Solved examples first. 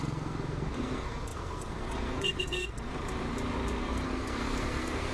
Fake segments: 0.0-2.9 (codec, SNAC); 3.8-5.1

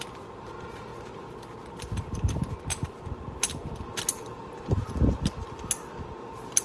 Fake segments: none

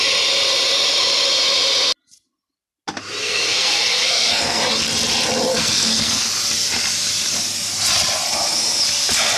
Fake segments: 3.2-4.6 (codec, SNAC); 5.5-6.2

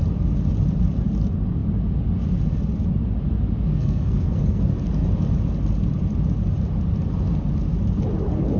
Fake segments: 3.7-4.6 (codec, SNAC)

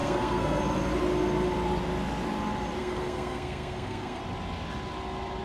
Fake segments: 0.0-0.6 (codec, SNAC); 2.8-4.2

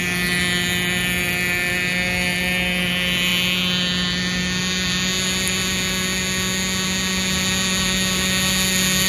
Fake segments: none